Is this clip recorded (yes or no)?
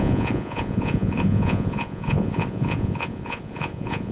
no